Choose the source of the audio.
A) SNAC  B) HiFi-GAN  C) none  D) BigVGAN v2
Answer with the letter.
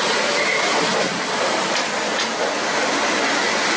C